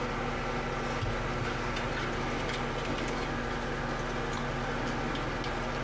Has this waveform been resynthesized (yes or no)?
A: no